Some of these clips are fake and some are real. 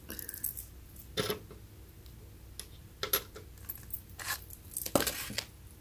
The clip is real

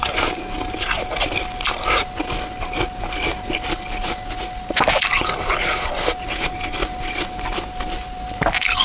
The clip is real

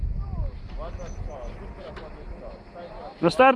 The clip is real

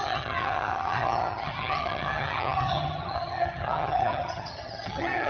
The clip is fake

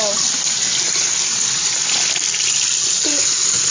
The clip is real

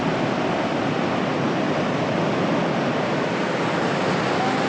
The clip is real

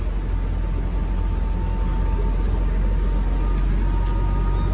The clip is real